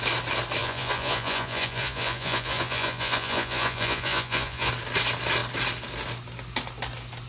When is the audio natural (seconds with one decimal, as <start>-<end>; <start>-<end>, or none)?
0.0-0.6; 4.7-7.3